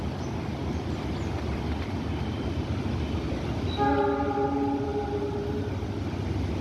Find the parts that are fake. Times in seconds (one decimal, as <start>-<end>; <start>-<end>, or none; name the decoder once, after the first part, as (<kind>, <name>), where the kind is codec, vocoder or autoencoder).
none